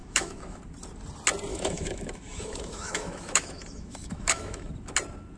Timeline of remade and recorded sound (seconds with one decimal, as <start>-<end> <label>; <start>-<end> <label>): 0.0-0.6 remade; 0.6-1.5 recorded; 1.5-4.7 remade; 4.7-5.4 recorded